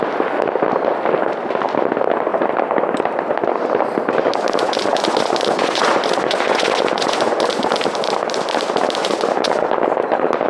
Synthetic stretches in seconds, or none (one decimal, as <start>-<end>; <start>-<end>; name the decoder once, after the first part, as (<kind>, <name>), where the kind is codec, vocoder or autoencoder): 4.6-7.7 (vocoder, Vocos); 9.0-9.8